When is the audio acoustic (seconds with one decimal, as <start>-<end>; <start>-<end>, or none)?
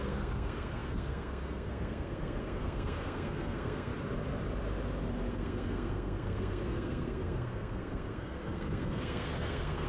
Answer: 3.9-5.3